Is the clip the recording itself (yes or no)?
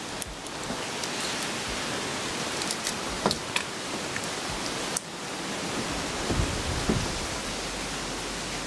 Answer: yes